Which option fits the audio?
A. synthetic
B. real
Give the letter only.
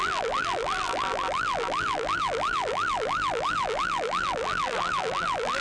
A